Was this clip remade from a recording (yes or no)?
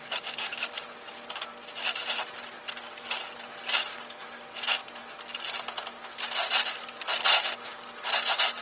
no